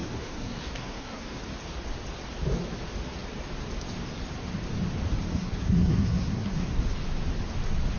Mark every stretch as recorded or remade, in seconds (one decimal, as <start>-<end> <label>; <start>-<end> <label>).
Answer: 0.0-1.4 remade; 1.4-5.3 recorded; 5.3-6.8 remade; 6.8-8.0 recorded